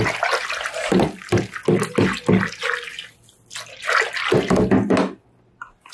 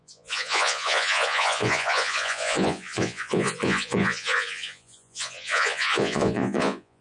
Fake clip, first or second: second